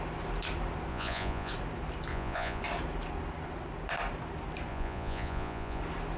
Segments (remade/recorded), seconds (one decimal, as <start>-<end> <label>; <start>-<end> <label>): 0.0-0.9 recorded; 0.9-1.5 remade; 1.5-2.1 recorded; 2.1-2.6 remade; 2.6-4.7 recorded; 4.7-5.8 remade; 5.8-6.2 recorded